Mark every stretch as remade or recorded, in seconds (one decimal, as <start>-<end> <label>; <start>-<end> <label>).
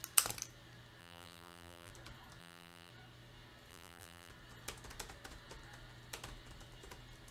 0.0-1.0 recorded; 1.0-1.9 remade; 1.9-2.4 recorded; 2.4-2.9 remade; 2.9-3.7 recorded; 3.7-4.3 remade; 4.3-7.3 recorded